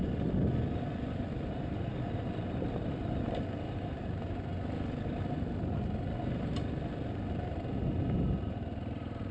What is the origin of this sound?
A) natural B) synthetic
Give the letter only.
A